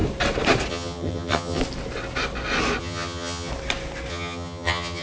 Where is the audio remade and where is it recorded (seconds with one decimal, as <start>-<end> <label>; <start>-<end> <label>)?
0.0-0.7 recorded; 0.7-1.6 remade; 1.6-2.8 recorded; 2.8-3.5 remade; 3.5-4.1 recorded; 4.1-5.0 remade